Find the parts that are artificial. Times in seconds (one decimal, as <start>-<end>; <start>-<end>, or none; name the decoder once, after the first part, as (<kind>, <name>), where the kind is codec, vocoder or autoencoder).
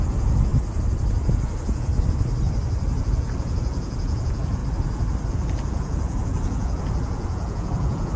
0.0-0.5 (vocoder, Vocos); 1.3-1.9; 3.0-4.6; 5.3-8.2